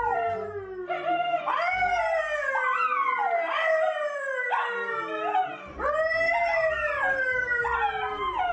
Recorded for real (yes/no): yes